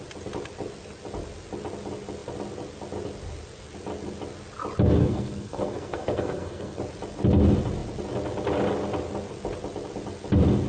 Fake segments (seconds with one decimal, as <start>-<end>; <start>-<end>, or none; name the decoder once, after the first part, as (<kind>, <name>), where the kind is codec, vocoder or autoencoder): 5.0-6.8 (codec, SNAC)